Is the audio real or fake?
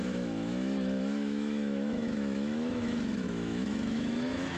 fake